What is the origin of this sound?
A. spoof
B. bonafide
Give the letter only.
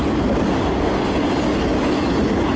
B